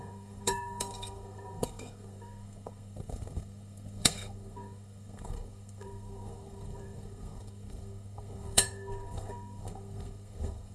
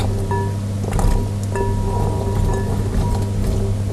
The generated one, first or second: first